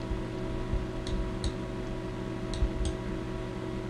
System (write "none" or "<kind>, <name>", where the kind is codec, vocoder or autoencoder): none